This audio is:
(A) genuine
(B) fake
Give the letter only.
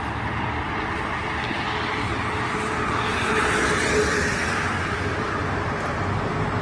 A